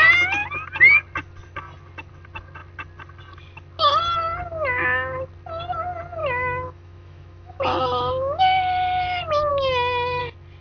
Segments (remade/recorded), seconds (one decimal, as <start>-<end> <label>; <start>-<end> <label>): 0.0-6.2 recorded; 6.2-8.4 remade; 8.4-9.5 recorded; 9.5-10.2 remade; 10.2-10.6 recorded